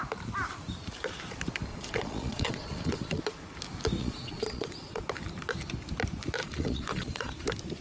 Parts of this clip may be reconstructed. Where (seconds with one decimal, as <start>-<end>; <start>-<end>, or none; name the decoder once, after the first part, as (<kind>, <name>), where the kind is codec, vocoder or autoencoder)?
1.7-3.2 (vocoder, Vocos); 4.0-5.0; 6.4-7.3